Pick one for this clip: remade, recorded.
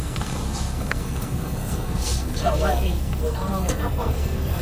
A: remade